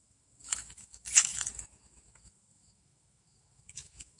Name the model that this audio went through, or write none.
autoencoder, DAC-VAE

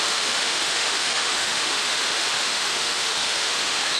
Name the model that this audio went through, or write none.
autoencoder, DAC-VAE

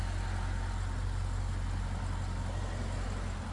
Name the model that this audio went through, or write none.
none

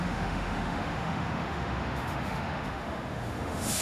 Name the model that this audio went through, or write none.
autoencoder, DAC-VAE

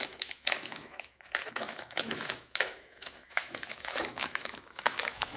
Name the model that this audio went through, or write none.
autoencoder, DAC-VAE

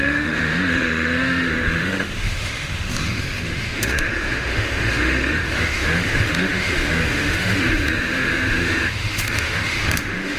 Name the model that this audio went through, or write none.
autoencoder, DAC-VAE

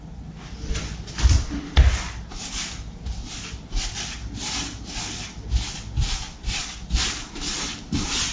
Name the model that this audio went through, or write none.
none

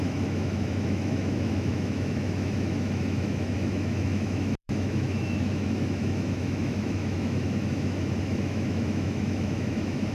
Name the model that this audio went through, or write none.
autoencoder, DAC-VAE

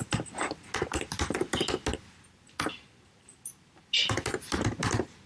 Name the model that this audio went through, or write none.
none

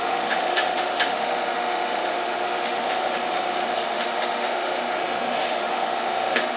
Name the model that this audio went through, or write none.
autoencoder, DAC-VAE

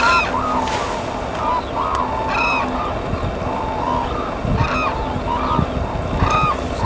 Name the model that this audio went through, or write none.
none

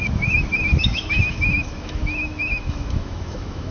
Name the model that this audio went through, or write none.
autoencoder, DAC-VAE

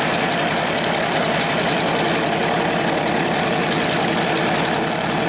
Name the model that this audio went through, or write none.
none